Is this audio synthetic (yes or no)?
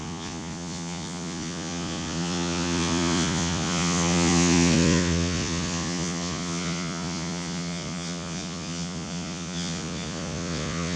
yes